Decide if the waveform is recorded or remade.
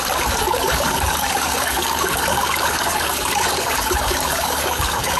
remade